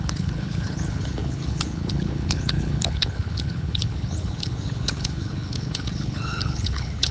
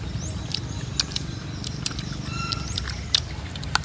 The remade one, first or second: first